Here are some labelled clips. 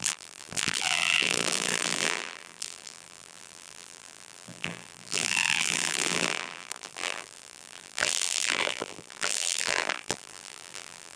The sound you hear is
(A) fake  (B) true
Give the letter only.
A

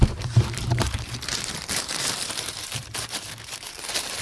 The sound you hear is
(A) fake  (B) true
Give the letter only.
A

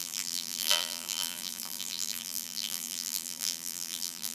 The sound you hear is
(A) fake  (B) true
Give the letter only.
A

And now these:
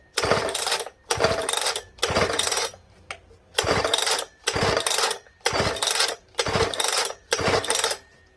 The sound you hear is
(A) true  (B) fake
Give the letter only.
B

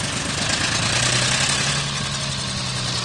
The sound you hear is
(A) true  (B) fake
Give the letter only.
A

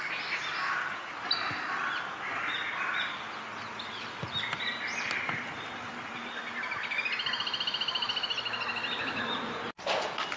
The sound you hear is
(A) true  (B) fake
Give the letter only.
A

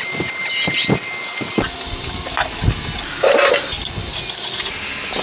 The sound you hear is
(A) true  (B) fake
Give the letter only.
A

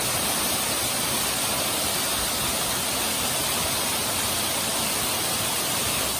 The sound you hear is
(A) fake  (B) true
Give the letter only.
B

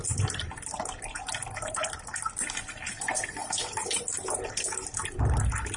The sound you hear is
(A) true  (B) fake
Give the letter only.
B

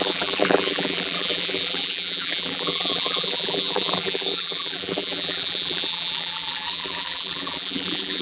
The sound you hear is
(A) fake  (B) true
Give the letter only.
A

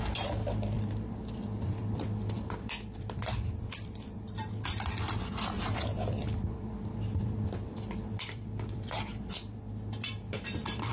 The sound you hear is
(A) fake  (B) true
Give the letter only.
A